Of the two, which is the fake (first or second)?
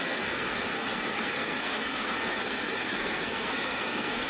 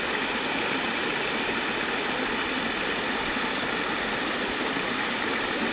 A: first